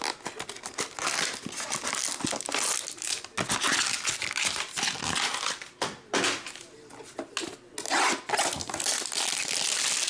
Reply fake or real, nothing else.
real